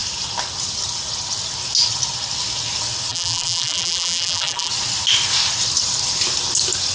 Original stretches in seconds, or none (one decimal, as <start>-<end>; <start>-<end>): 0.0-3.1; 4.7-6.9